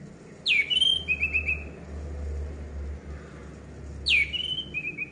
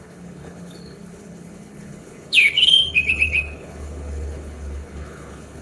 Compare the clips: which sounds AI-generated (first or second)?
second